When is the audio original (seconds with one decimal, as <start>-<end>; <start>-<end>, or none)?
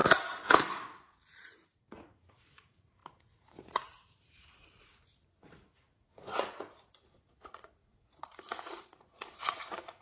0.0-0.5